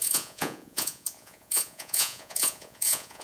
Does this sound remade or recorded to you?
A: remade